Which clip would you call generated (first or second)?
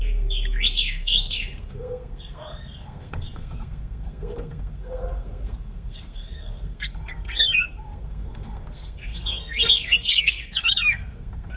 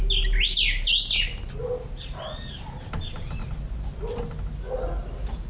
first